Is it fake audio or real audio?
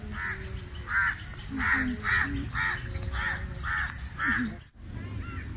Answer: real